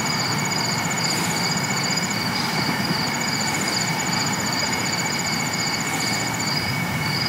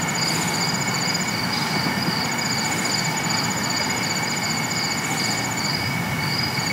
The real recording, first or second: second